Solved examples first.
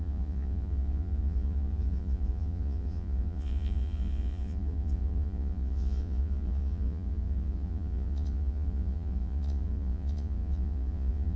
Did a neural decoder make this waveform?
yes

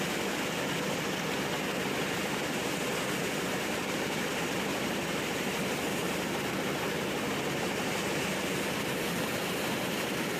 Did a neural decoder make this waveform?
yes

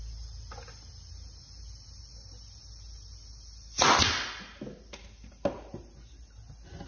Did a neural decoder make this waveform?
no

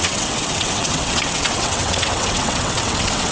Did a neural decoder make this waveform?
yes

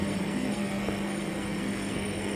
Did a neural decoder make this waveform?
yes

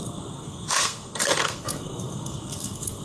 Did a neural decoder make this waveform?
yes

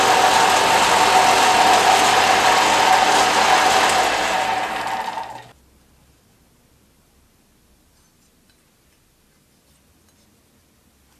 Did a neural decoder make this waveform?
no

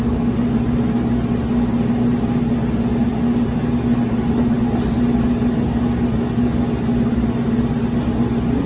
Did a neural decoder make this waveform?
no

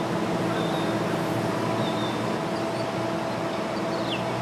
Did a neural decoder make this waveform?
no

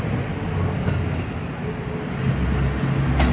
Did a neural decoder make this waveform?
no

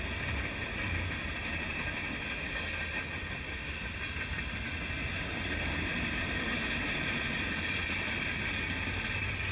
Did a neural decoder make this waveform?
no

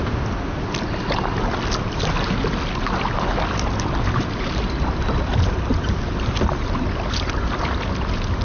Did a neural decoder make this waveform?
no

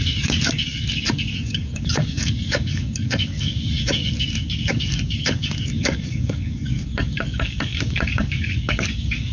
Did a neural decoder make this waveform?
yes